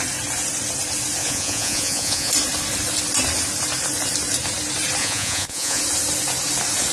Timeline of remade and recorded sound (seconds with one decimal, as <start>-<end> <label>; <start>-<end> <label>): 0.0-1.2 recorded; 1.2-2.3 remade; 2.3-5.0 recorded; 5.0-5.8 remade; 5.8-6.9 recorded